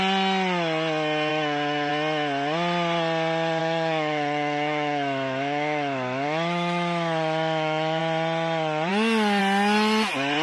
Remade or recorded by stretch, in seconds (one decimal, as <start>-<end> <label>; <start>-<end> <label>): 0.0-1.3 recorded; 1.3-1.9 remade; 1.9-3.6 recorded; 3.6-8.0 remade; 8.0-10.4 recorded